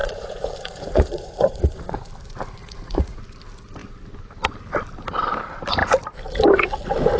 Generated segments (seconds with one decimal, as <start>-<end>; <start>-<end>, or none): 0.0-2.0; 2.6-3.2